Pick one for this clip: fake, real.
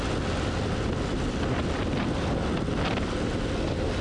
real